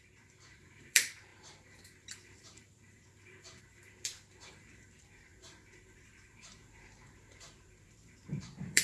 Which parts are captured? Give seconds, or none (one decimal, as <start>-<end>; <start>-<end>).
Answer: none

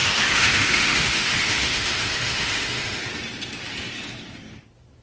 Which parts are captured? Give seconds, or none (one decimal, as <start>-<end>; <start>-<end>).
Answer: 3.0-5.0